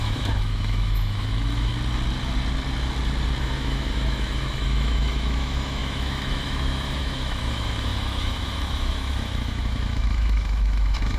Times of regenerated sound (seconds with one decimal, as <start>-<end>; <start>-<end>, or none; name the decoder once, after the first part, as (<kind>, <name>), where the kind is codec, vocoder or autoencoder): 0.0-1.7 (autoencoder, DAC-VAE); 3.4-11.2